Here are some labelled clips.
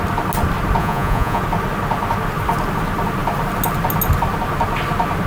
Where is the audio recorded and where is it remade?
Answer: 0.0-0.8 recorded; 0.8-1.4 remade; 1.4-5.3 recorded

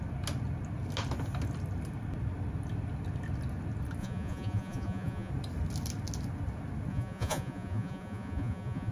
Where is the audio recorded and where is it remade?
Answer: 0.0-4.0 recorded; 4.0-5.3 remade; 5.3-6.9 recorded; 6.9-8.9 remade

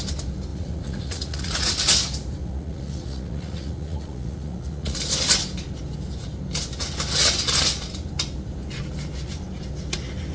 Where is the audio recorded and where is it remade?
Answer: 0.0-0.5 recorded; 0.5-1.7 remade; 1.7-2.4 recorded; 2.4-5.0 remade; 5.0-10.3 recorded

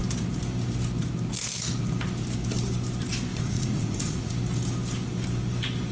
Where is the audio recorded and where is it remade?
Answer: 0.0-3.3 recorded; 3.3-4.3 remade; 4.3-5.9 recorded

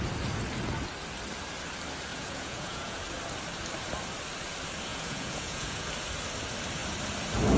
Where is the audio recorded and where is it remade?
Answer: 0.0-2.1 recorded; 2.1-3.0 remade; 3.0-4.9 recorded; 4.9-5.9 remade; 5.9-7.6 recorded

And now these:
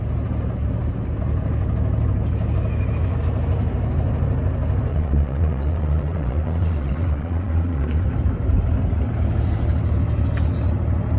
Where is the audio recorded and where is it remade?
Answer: 0.0-4.9 recorded; 4.9-8.0 remade; 8.0-11.2 recorded